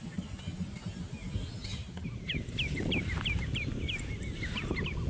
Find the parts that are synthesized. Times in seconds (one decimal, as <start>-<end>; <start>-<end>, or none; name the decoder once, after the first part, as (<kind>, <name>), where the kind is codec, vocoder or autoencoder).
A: 1.8-4.6 (vocoder, BigVGAN v2)